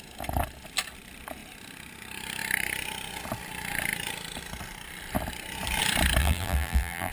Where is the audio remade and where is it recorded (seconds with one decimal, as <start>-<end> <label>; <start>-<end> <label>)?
0.0-6.2 recorded; 6.2-7.1 remade